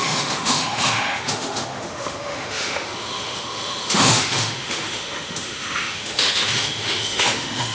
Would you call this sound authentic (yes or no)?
no